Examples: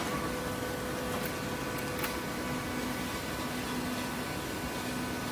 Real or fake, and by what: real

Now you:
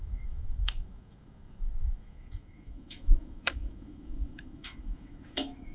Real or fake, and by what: fake, autoencoder, DAC-VAE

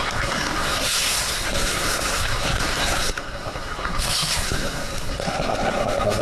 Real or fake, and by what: fake, codec, SNAC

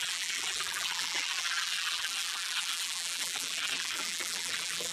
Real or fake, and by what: fake, vocoder, BigVGAN v2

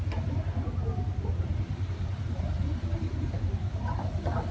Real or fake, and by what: real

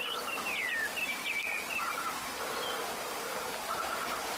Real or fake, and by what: fake, vocoder, BigVGAN v2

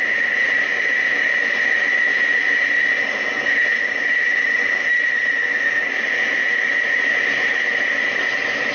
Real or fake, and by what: real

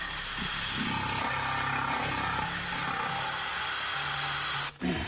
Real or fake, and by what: real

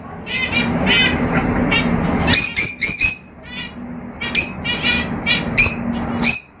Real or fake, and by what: real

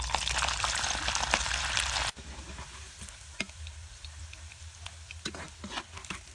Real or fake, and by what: real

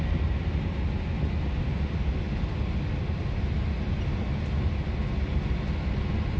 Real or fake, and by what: real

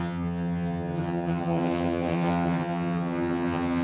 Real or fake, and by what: fake, vocoder, HiFi-GAN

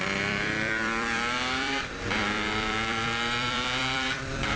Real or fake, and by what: fake, vocoder, BigVGAN v2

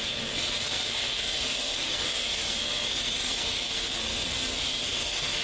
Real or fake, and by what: fake, codec, SNAC